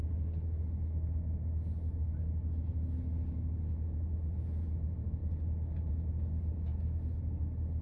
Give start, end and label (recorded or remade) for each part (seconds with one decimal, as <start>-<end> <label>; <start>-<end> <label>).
0.0-7.8 recorded